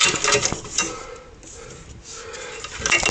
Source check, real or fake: real